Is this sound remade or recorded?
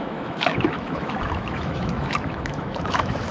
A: remade